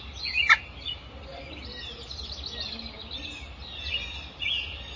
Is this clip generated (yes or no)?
no